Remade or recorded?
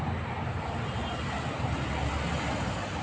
recorded